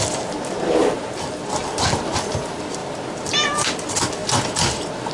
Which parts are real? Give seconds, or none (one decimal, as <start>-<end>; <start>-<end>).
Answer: 0.0-5.1